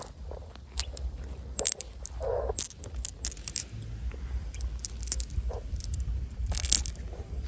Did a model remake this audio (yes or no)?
no